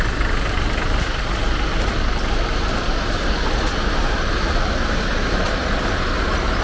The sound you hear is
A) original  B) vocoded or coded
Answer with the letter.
A